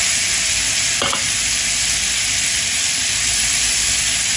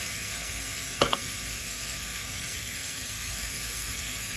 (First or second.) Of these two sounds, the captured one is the first